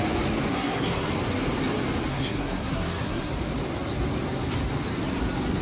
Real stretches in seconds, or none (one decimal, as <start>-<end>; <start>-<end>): 0.0-0.5; 1.1-2.1; 3.3-5.6